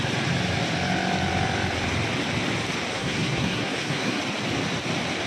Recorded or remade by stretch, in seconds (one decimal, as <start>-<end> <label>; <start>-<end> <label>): 0.0-2.9 recorded; 2.9-4.2 remade; 4.2-5.3 recorded